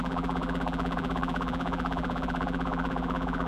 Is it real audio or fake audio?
fake